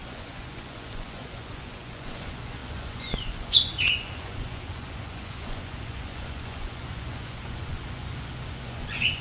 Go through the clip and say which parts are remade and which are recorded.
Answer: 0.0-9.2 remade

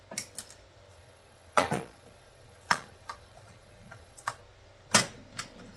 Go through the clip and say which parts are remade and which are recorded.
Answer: 0.0-0.9 recorded; 0.9-4.4 remade; 4.4-5.8 recorded